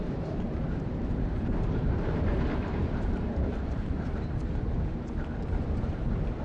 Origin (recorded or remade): remade